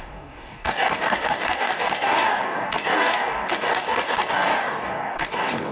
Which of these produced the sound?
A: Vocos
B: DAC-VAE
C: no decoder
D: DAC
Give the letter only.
D